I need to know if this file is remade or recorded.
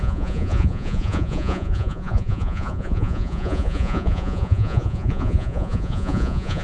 remade